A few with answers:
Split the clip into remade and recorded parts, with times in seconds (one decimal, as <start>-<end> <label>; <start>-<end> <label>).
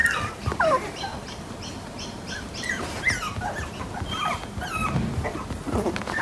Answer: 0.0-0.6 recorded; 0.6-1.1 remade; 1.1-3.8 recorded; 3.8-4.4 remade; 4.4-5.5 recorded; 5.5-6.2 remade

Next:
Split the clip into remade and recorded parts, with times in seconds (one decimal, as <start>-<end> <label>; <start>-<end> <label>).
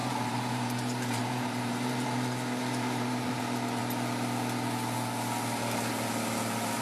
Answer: 0.0-3.4 remade; 3.4-6.8 recorded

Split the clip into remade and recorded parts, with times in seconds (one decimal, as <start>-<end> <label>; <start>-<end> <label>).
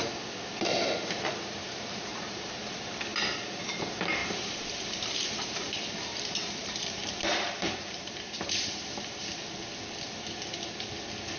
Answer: 0.0-1.6 recorded; 1.6-2.5 remade; 2.5-4.2 recorded; 4.2-9.0 remade; 9.0-11.4 recorded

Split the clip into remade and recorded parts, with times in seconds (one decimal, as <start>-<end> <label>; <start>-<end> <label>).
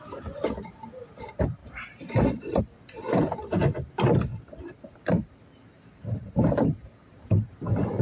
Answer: 0.0-1.6 recorded; 1.6-2.6 remade; 2.6-4.3 recorded; 4.3-7.2 remade; 7.2-8.0 recorded